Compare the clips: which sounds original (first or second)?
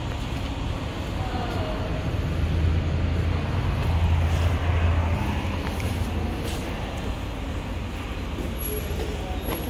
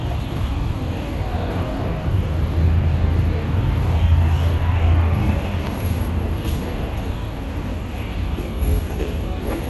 first